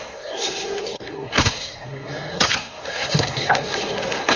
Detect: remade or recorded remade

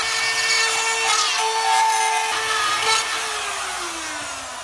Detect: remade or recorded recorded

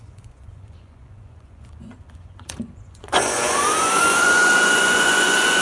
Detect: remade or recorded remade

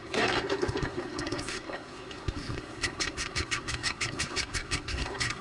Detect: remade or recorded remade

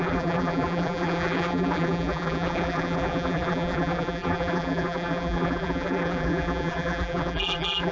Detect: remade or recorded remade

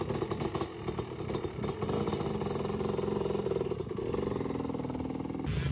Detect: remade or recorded recorded